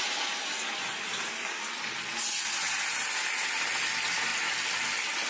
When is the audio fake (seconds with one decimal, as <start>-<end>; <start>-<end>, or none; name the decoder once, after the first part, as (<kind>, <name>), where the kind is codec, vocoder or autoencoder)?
4.3-5.3 (vocoder, BigVGAN v2)